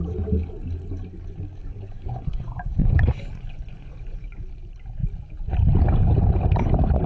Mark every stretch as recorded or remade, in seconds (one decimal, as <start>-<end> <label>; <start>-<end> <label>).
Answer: 0.0-1.6 recorded; 1.6-4.4 remade; 4.4-7.1 recorded